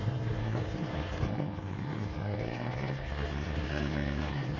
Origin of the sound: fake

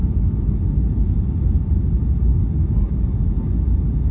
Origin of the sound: real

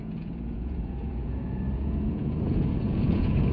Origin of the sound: fake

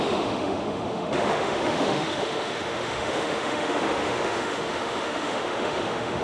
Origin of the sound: fake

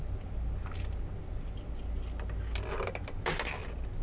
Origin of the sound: real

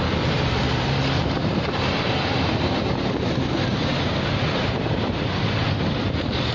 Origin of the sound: fake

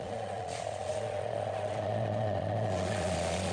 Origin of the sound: fake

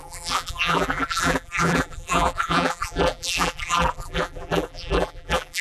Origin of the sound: fake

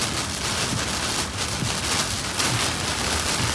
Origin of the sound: real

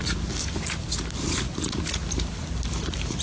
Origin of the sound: real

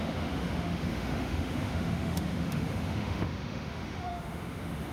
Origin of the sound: fake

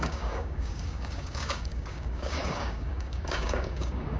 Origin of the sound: fake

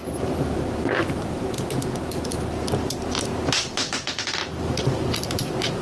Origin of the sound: real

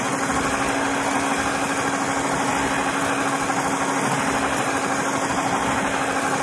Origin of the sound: real